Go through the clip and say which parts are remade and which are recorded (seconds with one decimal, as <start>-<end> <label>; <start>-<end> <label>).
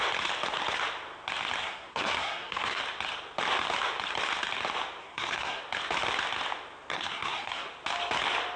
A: 0.0-1.6 recorded; 1.6-2.8 remade; 2.8-5.0 recorded; 5.0-5.6 remade; 5.6-6.9 recorded; 6.9-7.7 remade; 7.7-8.6 recorded